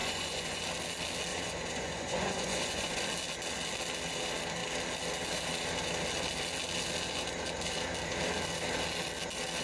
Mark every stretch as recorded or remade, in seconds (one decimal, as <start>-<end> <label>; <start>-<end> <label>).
0.0-0.6 remade; 0.6-1.3 recorded; 1.3-3.0 remade; 3.0-9.6 recorded